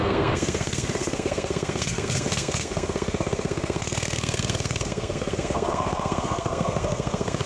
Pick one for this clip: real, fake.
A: fake